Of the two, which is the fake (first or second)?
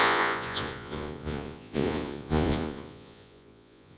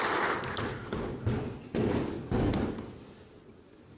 first